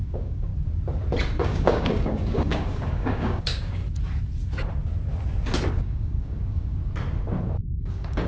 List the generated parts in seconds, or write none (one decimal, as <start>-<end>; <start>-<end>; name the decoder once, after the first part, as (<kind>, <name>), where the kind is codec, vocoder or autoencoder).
0.0-0.5 (codec, DAC); 1.4-3.8; 5.7-6.8; 7.9-8.3